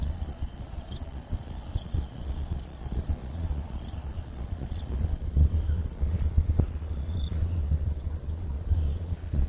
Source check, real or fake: fake